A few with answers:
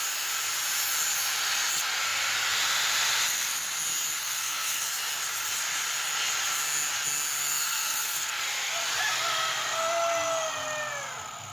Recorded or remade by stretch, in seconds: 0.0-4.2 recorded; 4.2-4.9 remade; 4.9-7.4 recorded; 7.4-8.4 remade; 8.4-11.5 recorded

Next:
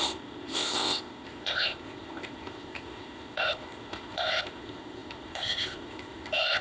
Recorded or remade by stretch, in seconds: 0.0-6.6 remade

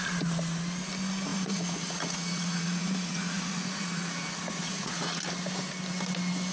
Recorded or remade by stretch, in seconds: 0.0-1.3 recorded; 1.3-5.2 remade; 5.2-6.5 recorded

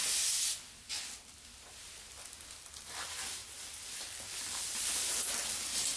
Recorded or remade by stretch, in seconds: 0.0-6.0 recorded

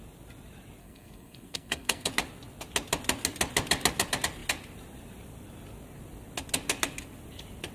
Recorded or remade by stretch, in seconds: 0.0-0.8 recorded; 0.8-2.1 remade; 2.1-7.7 recorded

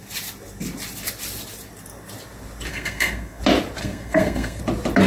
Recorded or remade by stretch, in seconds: 0.0-2.7 recorded; 2.7-3.4 remade; 3.4-3.8 recorded; 3.8-4.6 remade; 4.6-5.1 recorded

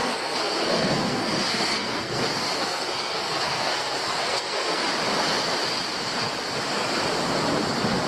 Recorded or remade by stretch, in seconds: 0.0-4.9 remade; 4.9-8.1 recorded